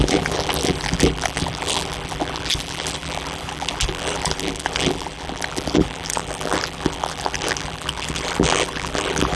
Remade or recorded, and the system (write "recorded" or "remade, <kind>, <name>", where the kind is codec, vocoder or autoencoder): remade, vocoder, BigVGAN v2